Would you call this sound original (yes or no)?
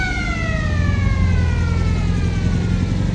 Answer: yes